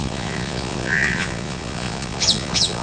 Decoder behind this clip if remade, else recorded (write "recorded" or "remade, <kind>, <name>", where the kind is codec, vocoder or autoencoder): remade, vocoder, Vocos